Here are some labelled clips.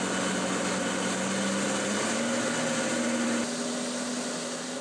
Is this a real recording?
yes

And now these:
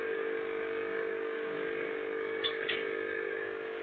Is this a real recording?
no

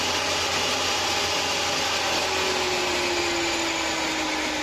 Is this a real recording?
yes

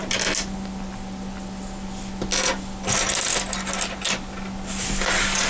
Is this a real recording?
yes